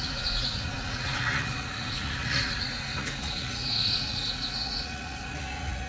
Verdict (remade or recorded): remade